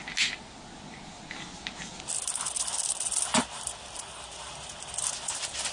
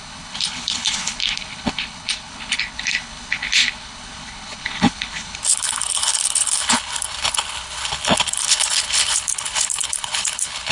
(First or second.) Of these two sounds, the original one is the first